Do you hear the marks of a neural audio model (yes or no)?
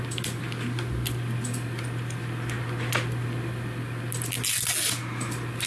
no